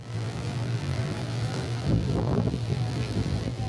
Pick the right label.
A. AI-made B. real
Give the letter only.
A